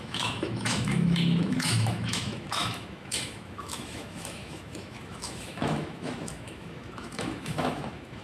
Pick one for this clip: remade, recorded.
remade